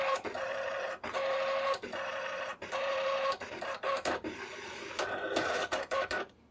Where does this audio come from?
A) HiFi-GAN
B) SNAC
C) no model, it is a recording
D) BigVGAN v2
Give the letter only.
D